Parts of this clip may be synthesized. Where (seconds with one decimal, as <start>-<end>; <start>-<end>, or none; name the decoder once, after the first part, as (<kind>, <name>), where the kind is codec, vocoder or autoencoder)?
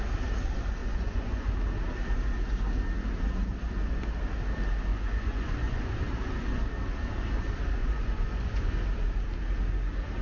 0.8-1.5 (vocoder, Vocos); 4.9-6.0; 7.8-8.7